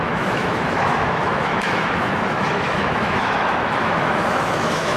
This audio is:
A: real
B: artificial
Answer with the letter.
B